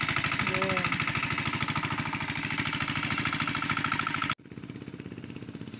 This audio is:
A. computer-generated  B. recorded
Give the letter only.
B